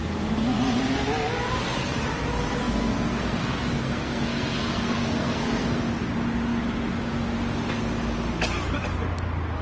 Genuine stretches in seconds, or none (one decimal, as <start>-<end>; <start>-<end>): 0.0-2.6; 5.8-9.6